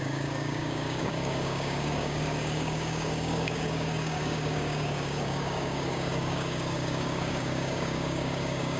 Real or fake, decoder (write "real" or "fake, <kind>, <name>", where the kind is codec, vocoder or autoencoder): fake, codec, DAC